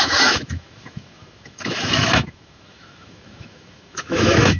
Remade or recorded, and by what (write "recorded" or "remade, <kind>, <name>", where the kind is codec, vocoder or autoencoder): remade, autoencoder, DAC-VAE